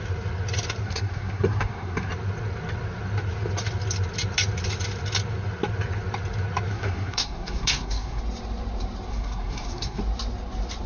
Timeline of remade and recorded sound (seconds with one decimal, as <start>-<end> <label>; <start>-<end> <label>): 0.0-0.8 recorded; 0.8-2.1 remade; 2.1-6.7 recorded; 6.7-8.2 remade; 8.2-9.1 recorded; 9.1-10.0 remade; 10.0-10.9 recorded